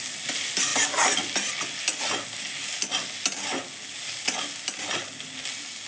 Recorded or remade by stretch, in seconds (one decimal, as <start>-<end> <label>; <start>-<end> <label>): 0.0-5.9 recorded